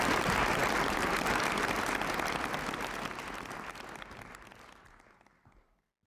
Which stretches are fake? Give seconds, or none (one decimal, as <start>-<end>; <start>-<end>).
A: none